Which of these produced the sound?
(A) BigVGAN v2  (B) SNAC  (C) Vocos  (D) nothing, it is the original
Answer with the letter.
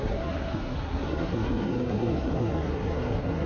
B